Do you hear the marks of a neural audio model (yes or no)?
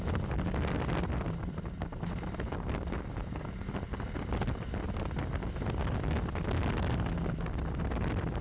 no